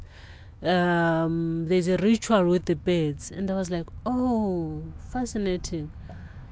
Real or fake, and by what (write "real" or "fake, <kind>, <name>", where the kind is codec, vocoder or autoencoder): fake, autoencoder, DAC-VAE